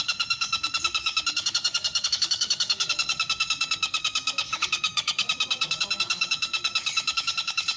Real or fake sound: fake